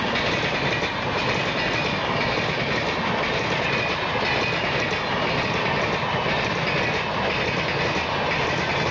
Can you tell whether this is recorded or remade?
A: recorded